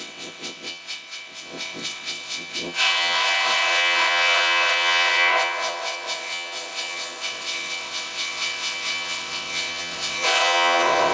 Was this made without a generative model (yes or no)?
no